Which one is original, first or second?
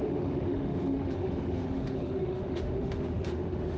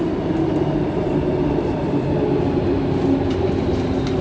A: second